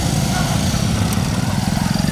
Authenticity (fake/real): real